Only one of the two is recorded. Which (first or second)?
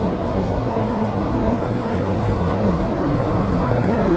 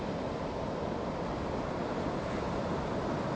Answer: second